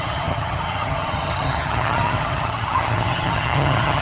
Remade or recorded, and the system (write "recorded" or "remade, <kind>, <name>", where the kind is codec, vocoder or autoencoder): remade, vocoder, HiFi-GAN